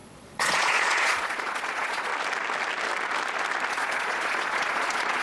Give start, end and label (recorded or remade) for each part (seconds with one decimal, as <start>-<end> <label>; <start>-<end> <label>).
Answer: 0.0-2.1 remade; 2.1-3.7 recorded; 3.7-5.2 remade